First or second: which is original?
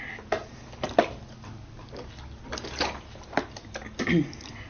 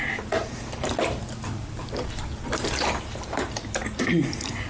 first